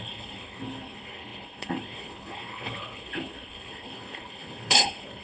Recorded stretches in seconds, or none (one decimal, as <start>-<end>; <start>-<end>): none